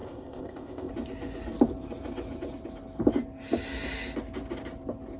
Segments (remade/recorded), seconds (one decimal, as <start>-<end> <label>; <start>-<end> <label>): 0.0-0.9 remade; 0.9-5.2 recorded